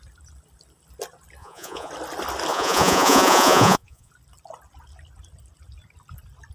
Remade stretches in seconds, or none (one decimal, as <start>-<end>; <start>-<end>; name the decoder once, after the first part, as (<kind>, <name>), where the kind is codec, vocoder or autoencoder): 1.4-1.9 (vocoder, Vocos); 2.5-4.1